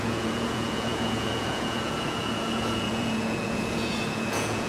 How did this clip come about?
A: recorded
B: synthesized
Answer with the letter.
B